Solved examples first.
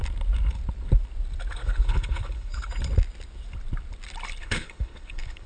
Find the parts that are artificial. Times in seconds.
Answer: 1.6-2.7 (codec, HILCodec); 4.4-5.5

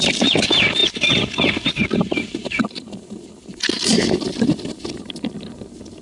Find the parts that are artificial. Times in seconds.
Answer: none

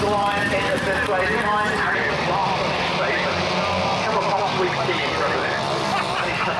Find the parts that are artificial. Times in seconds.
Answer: none